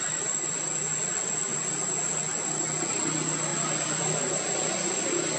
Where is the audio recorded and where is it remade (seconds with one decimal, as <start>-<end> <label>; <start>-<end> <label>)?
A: 0.0-5.4 recorded